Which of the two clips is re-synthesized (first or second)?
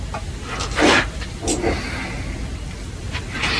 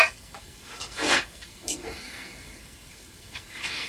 second